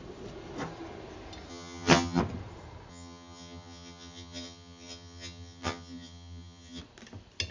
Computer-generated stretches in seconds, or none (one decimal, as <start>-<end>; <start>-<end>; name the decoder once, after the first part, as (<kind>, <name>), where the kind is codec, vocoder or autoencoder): 1.5-2.2 (vocoder, HiFi-GAN); 2.9-6.8

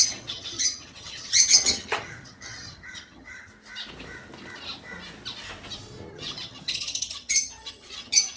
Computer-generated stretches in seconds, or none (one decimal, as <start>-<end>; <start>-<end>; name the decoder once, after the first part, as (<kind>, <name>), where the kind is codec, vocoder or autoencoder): 0.0-3.5 (vocoder, HiFi-GAN); 6.1-8.4

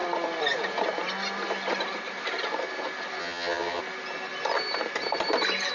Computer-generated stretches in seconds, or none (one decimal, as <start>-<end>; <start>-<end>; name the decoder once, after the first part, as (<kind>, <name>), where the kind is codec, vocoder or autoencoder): 3.2-3.8 (vocoder, HiFi-GAN)